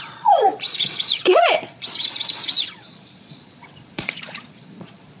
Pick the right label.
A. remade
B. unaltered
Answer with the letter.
A